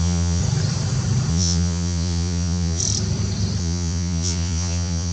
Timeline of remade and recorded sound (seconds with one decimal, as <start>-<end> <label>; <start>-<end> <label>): 0.0-0.4 remade; 0.4-1.3 recorded; 1.3-2.8 remade; 2.8-3.6 recorded; 3.6-5.1 remade

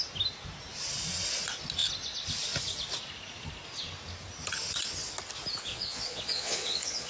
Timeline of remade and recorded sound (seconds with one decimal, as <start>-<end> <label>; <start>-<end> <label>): 0.0-5.7 recorded; 5.7-7.1 remade

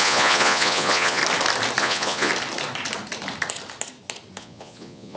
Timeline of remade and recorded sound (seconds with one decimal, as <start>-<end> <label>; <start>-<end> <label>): 0.0-1.2 remade; 1.2-1.8 recorded; 1.8-2.3 remade; 2.3-4.4 recorded; 4.4-5.2 remade

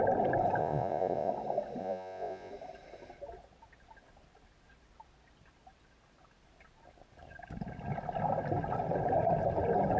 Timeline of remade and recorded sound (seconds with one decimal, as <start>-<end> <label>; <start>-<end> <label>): 0.0-0.6 recorded; 0.6-1.3 remade; 1.3-1.8 recorded; 1.8-2.5 remade; 2.5-10.0 recorded

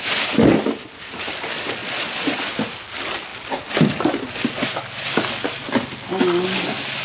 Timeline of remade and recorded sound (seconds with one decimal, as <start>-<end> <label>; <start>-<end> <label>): 0.0-1.8 recorded; 1.8-2.4 remade; 2.4-7.0 recorded

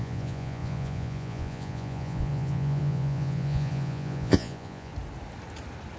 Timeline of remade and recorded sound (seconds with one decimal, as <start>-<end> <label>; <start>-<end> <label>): 0.0-4.9 remade; 4.9-6.0 recorded